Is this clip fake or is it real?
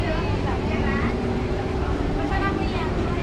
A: fake